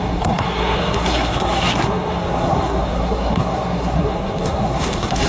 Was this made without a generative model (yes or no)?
no